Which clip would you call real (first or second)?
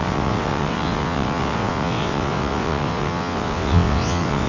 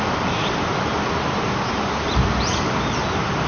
second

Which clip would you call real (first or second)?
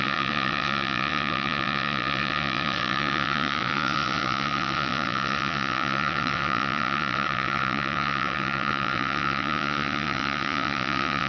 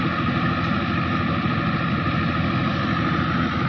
second